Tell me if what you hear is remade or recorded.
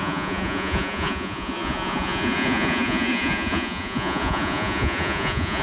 remade